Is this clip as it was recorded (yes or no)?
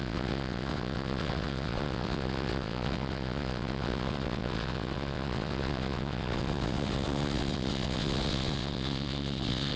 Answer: no